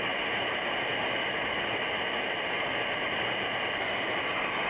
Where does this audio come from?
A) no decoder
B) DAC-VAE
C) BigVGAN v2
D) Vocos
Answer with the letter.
A